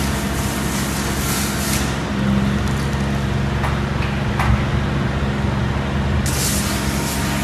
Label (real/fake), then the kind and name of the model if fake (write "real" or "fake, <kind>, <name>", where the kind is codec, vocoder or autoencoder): real